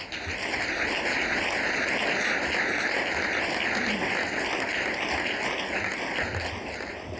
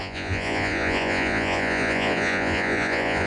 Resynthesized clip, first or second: second